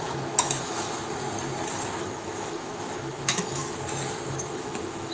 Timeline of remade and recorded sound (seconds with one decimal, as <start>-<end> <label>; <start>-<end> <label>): 0.0-1.0 remade; 1.0-2.0 recorded; 2.0-3.6 remade; 3.6-4.3 recorded; 4.3-5.1 remade